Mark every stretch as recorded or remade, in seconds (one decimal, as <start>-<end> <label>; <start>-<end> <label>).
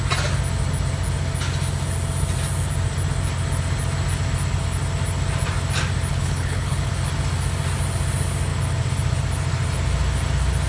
0.0-6.1 recorded; 6.1-6.9 remade; 6.9-10.7 recorded